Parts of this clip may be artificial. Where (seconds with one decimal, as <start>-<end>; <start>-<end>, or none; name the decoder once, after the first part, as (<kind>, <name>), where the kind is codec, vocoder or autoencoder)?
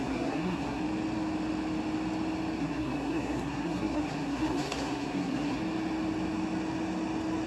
0.0-0.8 (codec, SNAC); 2.6-5.6